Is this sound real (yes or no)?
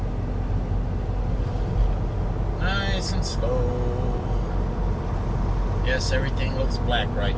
yes